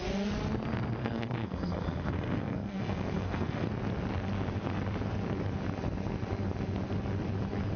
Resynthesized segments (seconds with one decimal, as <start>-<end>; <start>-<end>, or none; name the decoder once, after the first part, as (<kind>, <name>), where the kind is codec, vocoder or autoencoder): 1.0-3.7 (codec, SNAC)